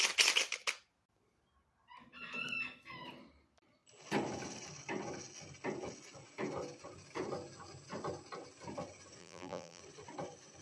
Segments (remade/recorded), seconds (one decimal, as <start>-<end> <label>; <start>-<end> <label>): 0.0-9.2 recorded; 9.2-9.8 remade; 9.8-10.6 recorded